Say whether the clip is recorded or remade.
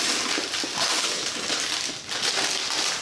recorded